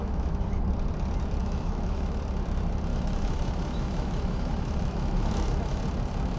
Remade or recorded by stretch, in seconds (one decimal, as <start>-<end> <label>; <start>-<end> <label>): 0.0-0.6 remade; 0.6-1.4 recorded; 1.4-2.2 remade; 2.2-2.9 recorded; 2.9-5.8 remade; 5.8-6.4 recorded